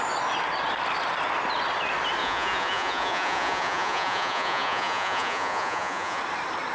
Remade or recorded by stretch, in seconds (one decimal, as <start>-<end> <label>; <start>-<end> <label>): 0.0-2.2 recorded; 2.2-6.2 remade; 6.2-6.7 recorded